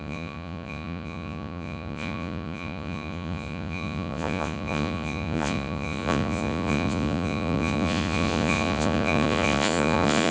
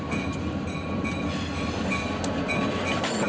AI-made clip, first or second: first